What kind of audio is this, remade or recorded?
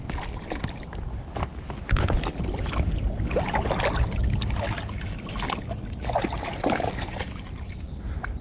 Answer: recorded